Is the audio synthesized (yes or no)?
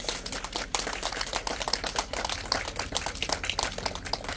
no